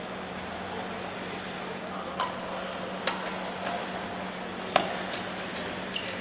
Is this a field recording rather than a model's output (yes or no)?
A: yes